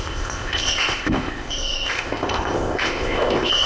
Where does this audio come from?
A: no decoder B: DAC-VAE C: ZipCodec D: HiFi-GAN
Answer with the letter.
C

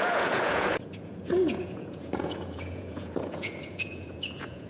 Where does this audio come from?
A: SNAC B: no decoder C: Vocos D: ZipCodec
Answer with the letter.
C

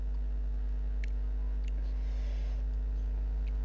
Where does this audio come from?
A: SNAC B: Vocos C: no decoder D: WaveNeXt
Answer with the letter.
C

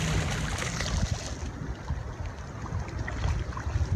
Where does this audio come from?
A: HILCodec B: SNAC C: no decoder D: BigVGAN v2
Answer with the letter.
C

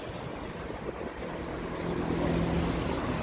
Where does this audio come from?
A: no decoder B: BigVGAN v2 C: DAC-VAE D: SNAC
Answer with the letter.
A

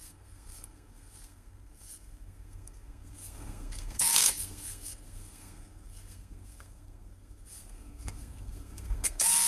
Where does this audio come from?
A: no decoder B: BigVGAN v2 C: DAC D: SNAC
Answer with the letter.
D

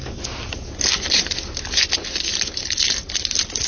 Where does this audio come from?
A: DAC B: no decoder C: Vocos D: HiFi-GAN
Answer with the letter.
B